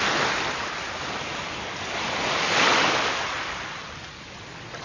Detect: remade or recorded recorded